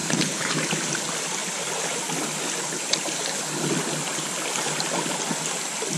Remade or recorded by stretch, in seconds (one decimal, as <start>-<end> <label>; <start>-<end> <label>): 0.0-0.5 remade; 0.5-6.0 recorded